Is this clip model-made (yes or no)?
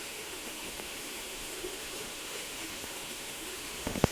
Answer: yes